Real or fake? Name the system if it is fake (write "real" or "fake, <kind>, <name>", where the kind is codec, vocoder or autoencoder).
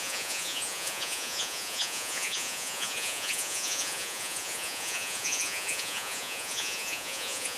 fake, vocoder, Vocos